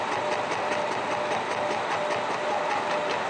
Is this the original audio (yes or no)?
yes